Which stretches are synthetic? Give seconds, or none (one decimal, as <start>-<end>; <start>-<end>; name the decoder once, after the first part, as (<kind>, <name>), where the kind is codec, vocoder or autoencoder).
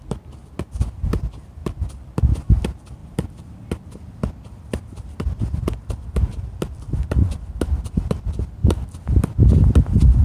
3.0-6.2 (vocoder, BigVGAN v2); 8.6-9.7